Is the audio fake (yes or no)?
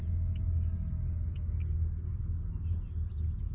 no